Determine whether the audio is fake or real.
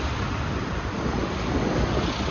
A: real